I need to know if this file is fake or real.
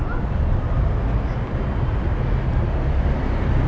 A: real